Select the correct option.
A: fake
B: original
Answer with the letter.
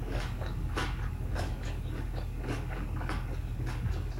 A